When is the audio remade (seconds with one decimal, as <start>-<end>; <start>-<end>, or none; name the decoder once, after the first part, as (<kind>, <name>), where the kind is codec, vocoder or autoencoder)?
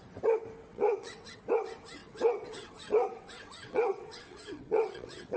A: 0.7-1.4 (vocoder, WaveNeXt); 2.0-5.4